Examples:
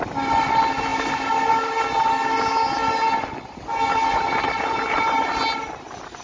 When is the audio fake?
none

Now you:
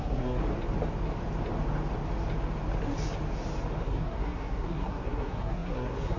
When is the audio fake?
0.0-0.4 (codec, SNAC); 3.8-6.2